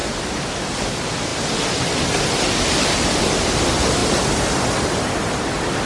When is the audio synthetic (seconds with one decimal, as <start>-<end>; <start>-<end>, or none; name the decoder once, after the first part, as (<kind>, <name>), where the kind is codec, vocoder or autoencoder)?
none